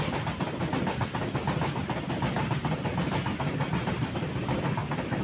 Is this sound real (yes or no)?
yes